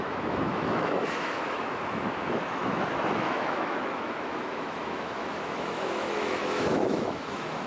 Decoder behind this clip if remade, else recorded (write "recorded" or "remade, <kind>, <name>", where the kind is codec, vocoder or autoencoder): remade, autoencoder, DAC-VAE